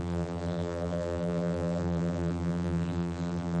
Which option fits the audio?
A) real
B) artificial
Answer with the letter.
B